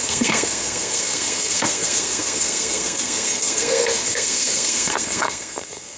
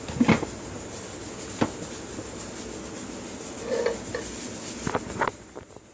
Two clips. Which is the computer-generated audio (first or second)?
first